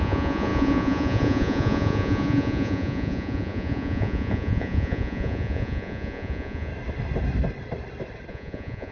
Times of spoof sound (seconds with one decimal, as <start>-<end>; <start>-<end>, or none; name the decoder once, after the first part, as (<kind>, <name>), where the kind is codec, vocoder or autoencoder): 0.0-6.7 (vocoder, Vocos); 8.3-8.9